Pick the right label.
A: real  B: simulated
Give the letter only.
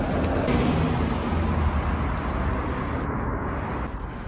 A